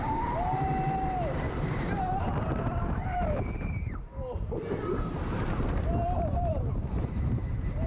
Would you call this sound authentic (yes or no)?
no